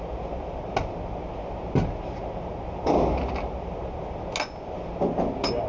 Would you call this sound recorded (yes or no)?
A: yes